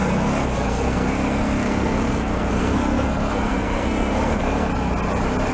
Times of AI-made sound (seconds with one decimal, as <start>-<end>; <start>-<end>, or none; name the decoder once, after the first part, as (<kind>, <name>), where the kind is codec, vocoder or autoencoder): 0.0-4.7 (codec, SNAC)